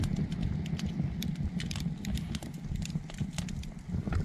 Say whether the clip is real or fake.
real